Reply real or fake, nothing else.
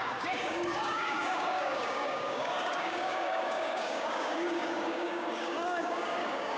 fake